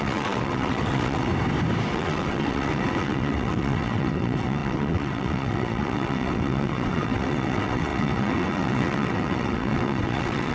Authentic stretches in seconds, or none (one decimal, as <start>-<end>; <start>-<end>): 1.3-1.9